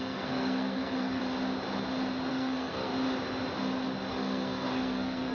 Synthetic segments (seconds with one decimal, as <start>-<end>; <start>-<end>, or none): 0.0-1.2; 2.3-2.9; 4.1-5.3